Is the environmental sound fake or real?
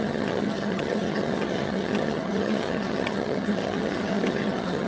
fake